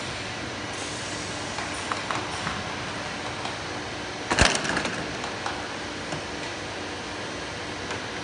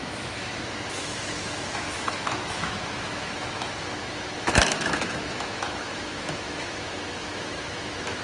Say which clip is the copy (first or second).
second